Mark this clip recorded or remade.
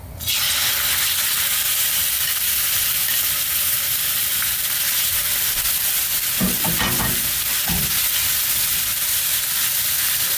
recorded